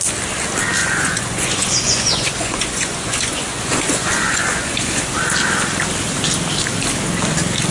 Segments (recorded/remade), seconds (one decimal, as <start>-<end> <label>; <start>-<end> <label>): 0.0-0.8 recorded; 0.8-5.0 remade; 5.0-7.7 recorded